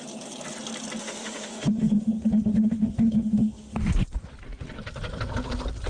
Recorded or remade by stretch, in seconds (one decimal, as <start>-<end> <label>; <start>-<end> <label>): 0.0-1.0 recorded; 1.0-3.9 remade; 3.9-5.9 recorded